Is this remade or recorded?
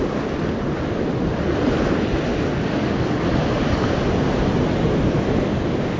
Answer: recorded